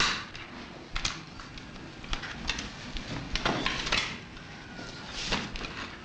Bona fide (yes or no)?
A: yes